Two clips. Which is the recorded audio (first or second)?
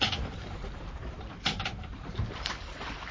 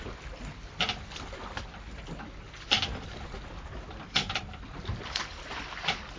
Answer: second